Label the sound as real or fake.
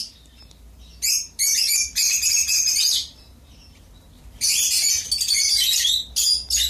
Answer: fake